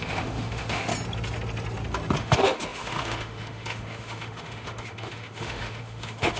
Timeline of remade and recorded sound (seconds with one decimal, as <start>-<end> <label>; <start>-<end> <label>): 0.0-0.9 remade; 0.9-2.2 recorded; 2.2-6.4 remade